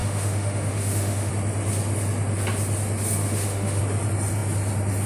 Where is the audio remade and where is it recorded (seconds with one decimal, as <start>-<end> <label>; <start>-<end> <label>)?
0.0-1.3 remade; 1.3-3.2 recorded; 3.2-3.8 remade; 3.8-5.1 recorded